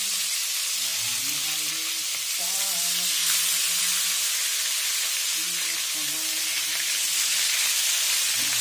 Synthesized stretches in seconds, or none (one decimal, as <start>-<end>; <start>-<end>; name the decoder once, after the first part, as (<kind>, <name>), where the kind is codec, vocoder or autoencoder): none